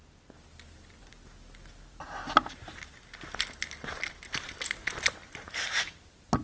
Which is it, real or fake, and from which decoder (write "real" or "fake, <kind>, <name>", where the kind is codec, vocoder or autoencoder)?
real